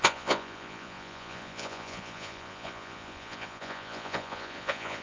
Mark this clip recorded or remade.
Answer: remade